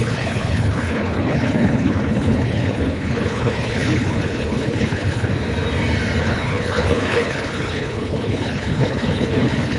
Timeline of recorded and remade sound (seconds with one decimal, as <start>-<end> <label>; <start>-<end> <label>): 0.0-5.3 remade; 5.3-6.2 recorded; 6.2-9.8 remade